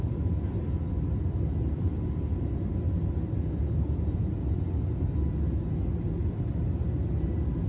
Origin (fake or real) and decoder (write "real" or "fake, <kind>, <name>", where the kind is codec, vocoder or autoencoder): real